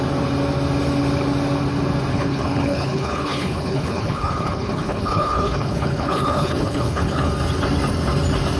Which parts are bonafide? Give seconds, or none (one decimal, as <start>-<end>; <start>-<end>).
0.0-2.1; 7.3-8.6